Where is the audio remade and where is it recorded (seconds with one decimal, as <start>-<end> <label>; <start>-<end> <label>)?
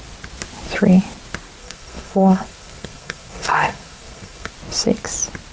0.0-1.6 recorded; 1.6-4.5 remade; 4.5-5.5 recorded